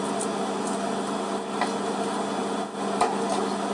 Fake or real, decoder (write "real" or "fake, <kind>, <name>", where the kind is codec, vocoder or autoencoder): real